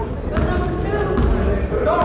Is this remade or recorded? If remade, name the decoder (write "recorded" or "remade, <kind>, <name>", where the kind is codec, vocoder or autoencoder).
recorded